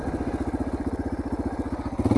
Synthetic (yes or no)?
no